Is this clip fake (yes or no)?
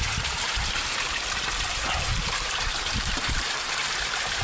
yes